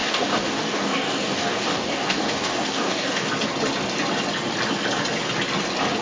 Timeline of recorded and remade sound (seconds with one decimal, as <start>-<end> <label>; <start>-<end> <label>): 0.0-3.3 remade; 3.3-6.0 recorded